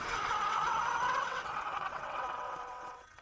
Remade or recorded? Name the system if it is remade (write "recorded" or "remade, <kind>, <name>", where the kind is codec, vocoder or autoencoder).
remade, vocoder, WaveNeXt